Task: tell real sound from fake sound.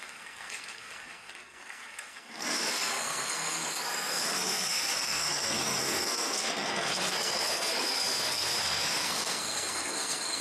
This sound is fake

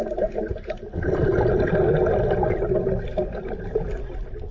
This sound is real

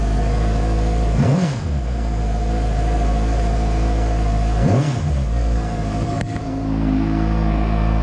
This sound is fake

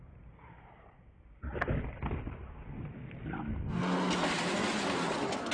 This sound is real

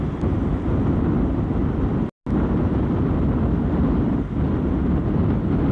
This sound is real